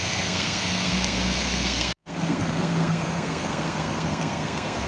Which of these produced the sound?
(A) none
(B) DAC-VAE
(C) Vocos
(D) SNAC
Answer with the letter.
D